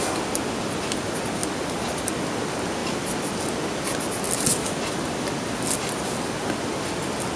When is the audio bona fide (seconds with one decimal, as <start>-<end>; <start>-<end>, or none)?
0.0-7.4